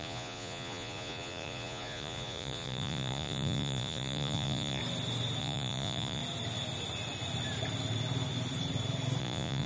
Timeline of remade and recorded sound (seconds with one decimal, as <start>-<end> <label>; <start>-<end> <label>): 0.0-4.8 remade; 4.8-5.4 recorded; 5.4-6.2 remade; 6.2-9.2 recorded; 9.2-9.7 remade